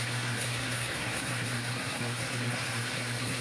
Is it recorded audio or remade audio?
remade